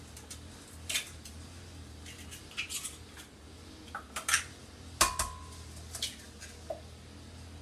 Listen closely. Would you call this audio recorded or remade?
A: recorded